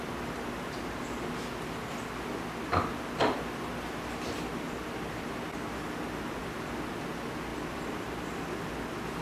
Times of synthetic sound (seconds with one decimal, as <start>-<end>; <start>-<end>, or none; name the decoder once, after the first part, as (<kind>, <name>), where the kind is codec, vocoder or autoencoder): none